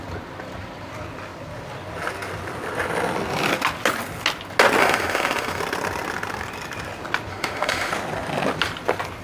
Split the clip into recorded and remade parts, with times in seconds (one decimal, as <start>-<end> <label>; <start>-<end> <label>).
0.0-4.8 recorded; 4.8-5.6 remade; 5.6-7.3 recorded; 7.3-7.9 remade; 7.9-9.2 recorded